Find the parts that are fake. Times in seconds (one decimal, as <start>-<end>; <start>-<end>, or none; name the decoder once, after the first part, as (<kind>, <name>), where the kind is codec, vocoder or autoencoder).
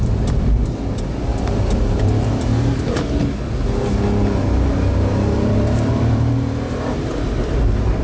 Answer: 1.3-3.0 (vocoder, BigVGAN v2); 5.1-7.3